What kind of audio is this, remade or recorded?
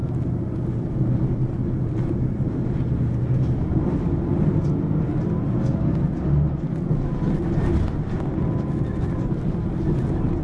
recorded